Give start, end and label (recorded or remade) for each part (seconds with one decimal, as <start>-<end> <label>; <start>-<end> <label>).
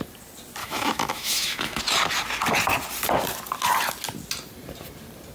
0.0-0.6 recorded; 0.6-1.8 remade; 1.8-5.3 recorded